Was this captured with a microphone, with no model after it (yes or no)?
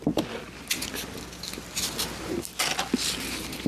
yes